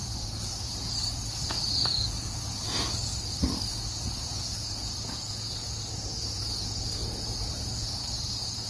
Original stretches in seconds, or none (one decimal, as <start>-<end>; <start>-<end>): 3.1-3.7